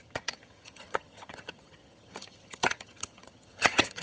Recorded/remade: remade